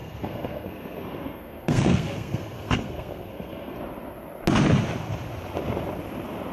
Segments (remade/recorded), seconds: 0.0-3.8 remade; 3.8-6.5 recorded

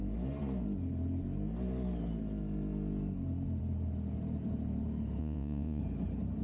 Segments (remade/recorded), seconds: 0.0-5.2 recorded; 5.2-5.8 remade; 5.8-6.4 recorded

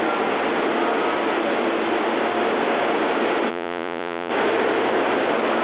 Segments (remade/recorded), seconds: 0.0-3.5 recorded; 3.5-4.3 remade; 4.3-5.6 recorded

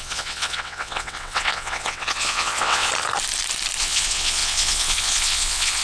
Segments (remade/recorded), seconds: 0.0-2.9 remade; 2.9-3.8 recorded; 3.8-5.8 remade

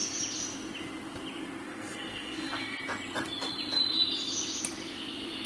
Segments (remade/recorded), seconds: 0.0-1.7 recorded; 1.7-2.8 remade; 2.8-5.5 recorded

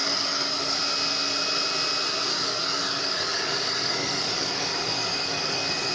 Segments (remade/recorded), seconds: 0.0-0.8 remade; 0.8-2.3 recorded; 2.3-5.9 remade